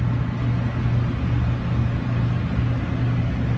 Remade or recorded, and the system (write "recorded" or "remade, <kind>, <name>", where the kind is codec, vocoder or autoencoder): recorded